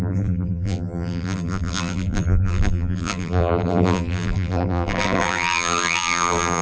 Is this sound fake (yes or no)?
yes